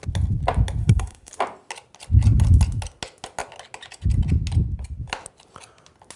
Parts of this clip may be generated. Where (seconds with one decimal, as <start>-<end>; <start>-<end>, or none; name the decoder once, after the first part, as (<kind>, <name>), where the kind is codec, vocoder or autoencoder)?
0.8-1.3 (codec, SNAC)